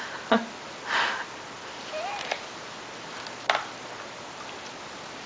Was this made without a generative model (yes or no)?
yes